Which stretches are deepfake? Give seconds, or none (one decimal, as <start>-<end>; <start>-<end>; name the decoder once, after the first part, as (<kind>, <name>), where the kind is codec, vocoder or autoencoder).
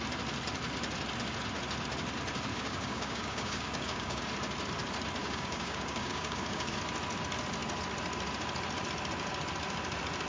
2.5-4.2 (codec, DAC); 5.2-6.8